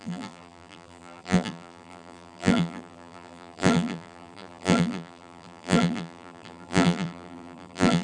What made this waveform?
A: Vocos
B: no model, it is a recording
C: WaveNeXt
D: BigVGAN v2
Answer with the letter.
D